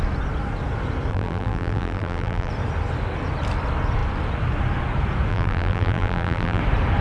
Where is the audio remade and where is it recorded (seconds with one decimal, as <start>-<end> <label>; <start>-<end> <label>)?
0.0-1.1 recorded; 1.1-2.5 remade; 2.5-5.3 recorded; 5.3-6.6 remade; 6.6-7.0 recorded